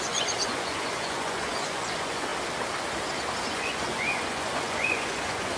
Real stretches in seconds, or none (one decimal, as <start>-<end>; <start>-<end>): 2.3-3.5